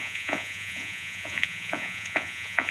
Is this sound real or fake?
fake